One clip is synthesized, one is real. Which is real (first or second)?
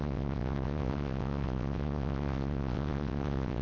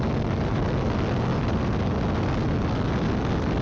second